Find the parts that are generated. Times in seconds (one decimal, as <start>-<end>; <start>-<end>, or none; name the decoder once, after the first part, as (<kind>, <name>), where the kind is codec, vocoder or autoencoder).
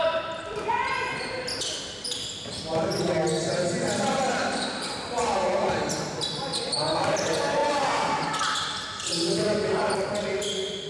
none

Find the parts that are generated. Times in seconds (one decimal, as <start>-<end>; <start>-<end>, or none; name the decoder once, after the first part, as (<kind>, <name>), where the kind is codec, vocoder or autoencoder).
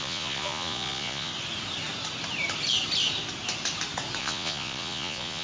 0.0-1.3 (vocoder, Vocos); 4.2-5.4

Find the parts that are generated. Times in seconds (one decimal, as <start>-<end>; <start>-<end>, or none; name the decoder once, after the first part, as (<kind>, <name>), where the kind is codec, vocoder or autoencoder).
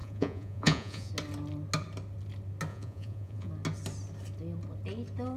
0.0-1.1 (vocoder, Vocos); 2.7-3.5